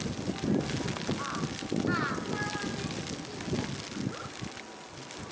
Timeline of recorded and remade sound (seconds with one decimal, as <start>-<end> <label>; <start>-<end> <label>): 0.0-5.3 recorded